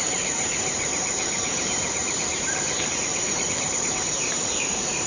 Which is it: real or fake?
fake